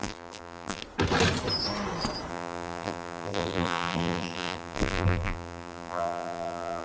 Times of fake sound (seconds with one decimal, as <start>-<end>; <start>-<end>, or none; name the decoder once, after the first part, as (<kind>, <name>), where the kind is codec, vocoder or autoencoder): 0.0-0.8 (vocoder, BigVGAN v2); 2.3-6.8